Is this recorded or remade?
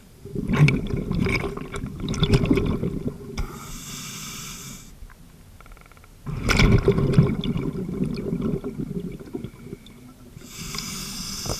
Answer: recorded